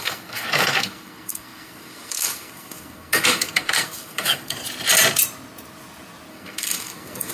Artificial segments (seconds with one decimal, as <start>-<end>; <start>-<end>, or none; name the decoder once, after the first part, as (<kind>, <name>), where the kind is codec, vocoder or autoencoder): 0.0-4.6 (codec, SNAC); 6.3-7.3